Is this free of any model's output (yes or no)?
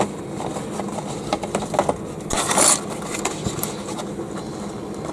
yes